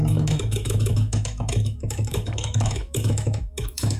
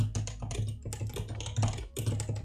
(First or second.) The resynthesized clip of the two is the first